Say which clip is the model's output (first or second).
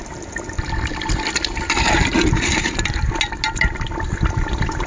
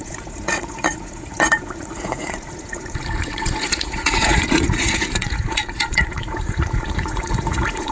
second